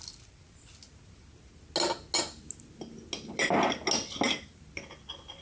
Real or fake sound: real